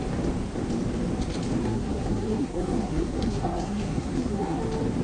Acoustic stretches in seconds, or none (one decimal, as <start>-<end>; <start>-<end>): 0.0-1.6; 4.6-5.0